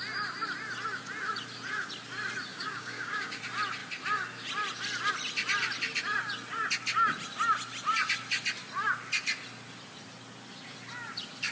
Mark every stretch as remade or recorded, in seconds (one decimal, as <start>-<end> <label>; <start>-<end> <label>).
0.0-2.5 recorded; 2.5-3.4 remade; 3.4-11.5 recorded